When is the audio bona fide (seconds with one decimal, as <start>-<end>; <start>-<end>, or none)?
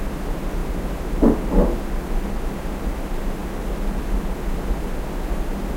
0.0-5.8